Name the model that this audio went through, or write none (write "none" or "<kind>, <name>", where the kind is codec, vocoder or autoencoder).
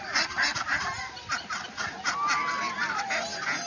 none